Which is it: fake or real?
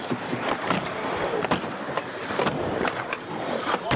fake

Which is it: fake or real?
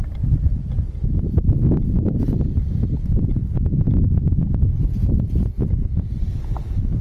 real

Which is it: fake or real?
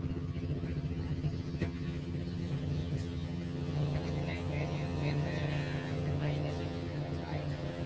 fake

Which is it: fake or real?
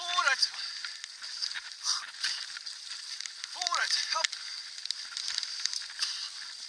real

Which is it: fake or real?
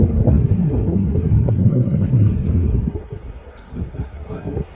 fake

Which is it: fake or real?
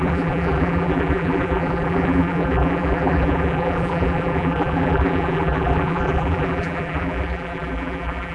fake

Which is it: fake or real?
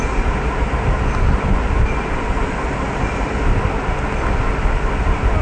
real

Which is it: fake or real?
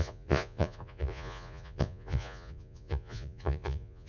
fake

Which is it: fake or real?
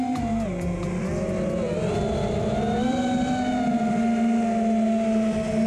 real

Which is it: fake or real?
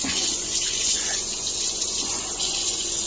fake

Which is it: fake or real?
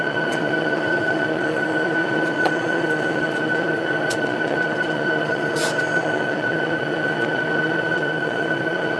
fake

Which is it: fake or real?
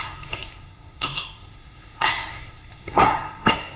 fake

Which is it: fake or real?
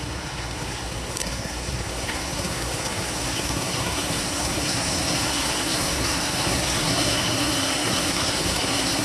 fake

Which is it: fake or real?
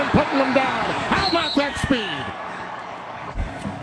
fake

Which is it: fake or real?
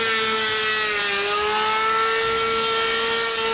real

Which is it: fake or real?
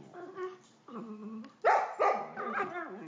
real